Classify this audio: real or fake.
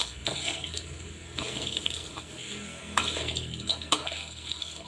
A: fake